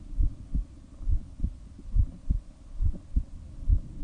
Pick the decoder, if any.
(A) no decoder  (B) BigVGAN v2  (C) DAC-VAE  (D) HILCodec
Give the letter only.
A